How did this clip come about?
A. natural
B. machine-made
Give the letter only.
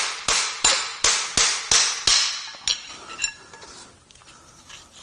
A